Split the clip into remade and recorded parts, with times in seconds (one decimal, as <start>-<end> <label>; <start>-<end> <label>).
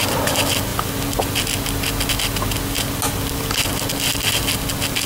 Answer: 0.0-5.1 recorded